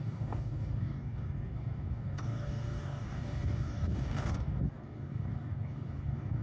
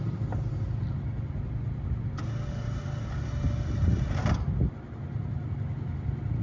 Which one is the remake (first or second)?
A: first